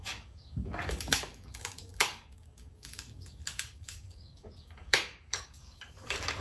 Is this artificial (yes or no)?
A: yes